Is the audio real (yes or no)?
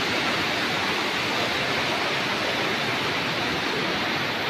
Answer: yes